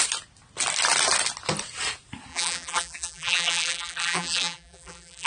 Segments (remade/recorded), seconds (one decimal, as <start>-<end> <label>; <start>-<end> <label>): 0.0-2.3 recorded; 2.3-5.3 remade